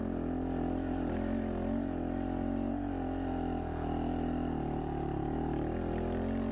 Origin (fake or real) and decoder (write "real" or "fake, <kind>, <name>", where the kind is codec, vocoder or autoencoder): real